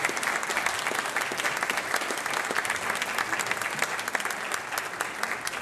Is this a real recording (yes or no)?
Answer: yes